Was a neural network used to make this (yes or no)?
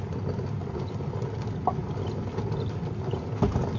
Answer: no